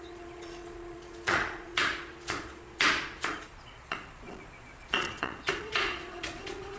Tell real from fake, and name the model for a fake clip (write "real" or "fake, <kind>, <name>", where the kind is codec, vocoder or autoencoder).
fake, vocoder, Vocos